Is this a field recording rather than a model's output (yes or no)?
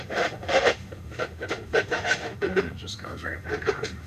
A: no